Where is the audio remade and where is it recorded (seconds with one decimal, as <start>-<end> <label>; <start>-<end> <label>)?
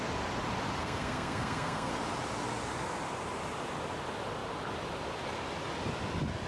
0.0-0.8 recorded; 0.8-1.9 remade; 1.9-6.5 recorded